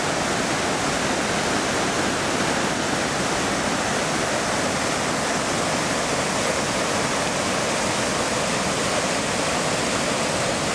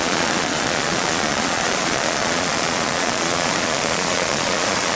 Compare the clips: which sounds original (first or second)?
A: first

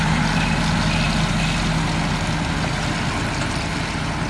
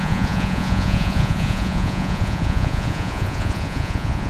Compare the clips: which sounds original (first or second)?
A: first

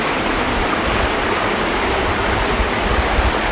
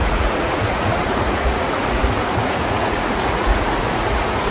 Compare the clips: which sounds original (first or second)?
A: first